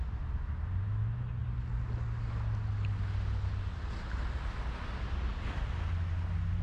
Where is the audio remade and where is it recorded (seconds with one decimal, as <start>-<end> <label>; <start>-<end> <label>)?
0.0-6.6 recorded